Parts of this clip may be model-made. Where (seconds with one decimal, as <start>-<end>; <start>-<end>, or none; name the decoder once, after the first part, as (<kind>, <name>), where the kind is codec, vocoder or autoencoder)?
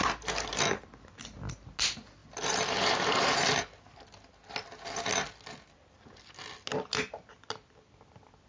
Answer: 2.2-3.2 (vocoder, BigVGAN v2)